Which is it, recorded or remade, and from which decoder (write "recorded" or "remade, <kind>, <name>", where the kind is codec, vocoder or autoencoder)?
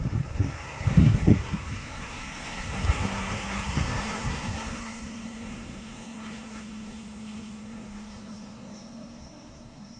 remade, codec, SNAC